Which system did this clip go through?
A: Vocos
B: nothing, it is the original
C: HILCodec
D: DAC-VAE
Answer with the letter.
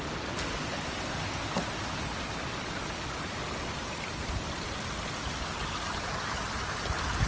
B